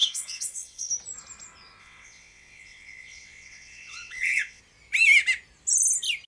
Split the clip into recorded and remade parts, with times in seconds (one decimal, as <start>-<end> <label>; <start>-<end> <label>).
0.0-0.9 remade; 0.9-1.8 recorded; 1.8-4.6 remade; 4.6-6.3 recorded